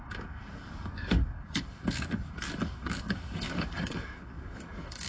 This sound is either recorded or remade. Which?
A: remade